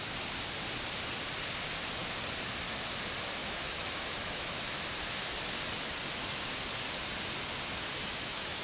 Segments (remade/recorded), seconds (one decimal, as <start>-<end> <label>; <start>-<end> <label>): 0.0-3.4 recorded; 3.4-4.8 remade; 4.8-8.1 recorded; 8.1-8.6 remade